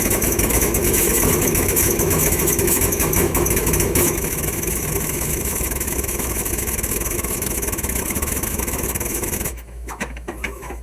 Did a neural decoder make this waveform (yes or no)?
yes